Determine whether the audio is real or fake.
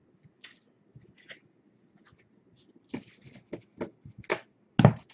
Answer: real